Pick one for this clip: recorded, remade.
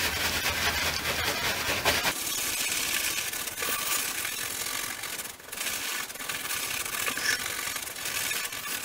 recorded